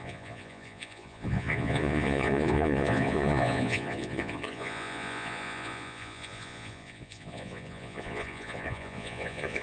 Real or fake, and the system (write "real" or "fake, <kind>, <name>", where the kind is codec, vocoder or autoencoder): fake, vocoder, Vocos